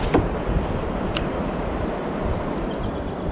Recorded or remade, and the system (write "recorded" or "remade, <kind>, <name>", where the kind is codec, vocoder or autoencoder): remade, vocoder, BigVGAN v2